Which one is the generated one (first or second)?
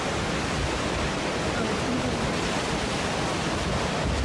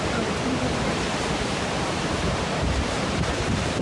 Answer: second